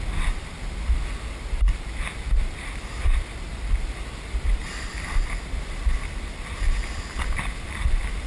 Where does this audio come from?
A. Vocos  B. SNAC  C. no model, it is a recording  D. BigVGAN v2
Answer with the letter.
D